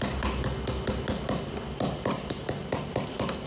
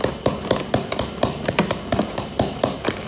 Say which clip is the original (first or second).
first